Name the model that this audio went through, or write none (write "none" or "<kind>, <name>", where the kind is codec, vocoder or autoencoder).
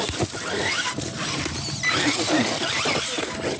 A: none